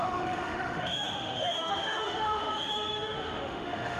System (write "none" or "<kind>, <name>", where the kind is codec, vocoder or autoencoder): autoencoder, DAC-VAE